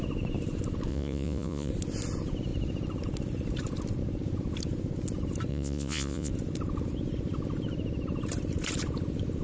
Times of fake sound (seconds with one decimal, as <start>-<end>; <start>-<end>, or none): 0.9-1.7; 5.5-6.3